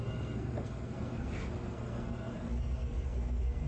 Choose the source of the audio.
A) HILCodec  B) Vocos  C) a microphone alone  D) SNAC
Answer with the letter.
D